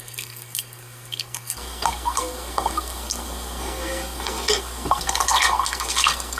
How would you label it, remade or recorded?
remade